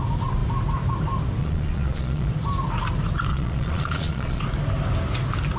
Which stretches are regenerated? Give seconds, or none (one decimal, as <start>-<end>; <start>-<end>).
1.4-2.3; 3.3-4.4